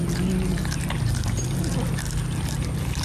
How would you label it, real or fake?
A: real